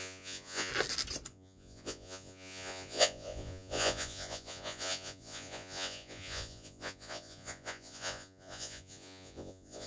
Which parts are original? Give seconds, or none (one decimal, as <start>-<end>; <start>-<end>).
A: 0.7-1.3